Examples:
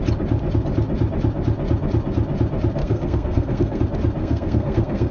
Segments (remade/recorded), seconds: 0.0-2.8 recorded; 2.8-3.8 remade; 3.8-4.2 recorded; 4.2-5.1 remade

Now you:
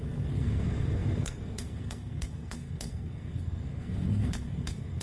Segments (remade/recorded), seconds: 0.0-5.0 remade

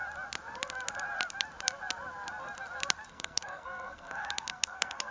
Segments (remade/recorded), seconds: 0.0-3.1 recorded; 3.1-5.1 remade

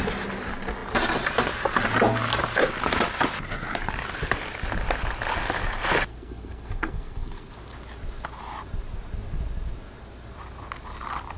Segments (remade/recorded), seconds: 0.0-6.1 recorded; 6.1-7.5 remade; 7.5-11.4 recorded

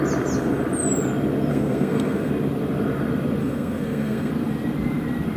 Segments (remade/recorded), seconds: 0.0-1.5 recorded; 1.5-2.3 remade; 2.3-3.4 recorded; 3.4-4.3 remade; 4.3-5.4 recorded

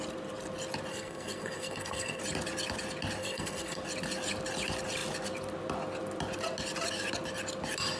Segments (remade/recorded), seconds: 0.0-0.9 recorded; 0.9-2.2 remade; 2.2-3.2 recorded; 3.2-3.8 remade; 3.8-8.0 recorded

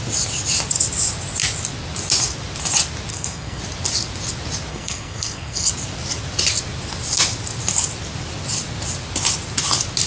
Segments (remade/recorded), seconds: 0.0-3.1 recorded; 3.1-3.6 remade; 3.6-4.7 recorded; 4.7-5.7 remade; 5.7-10.1 recorded